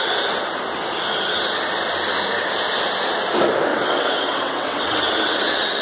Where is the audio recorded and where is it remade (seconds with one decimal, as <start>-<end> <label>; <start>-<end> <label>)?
0.0-3.7 recorded; 3.7-5.8 remade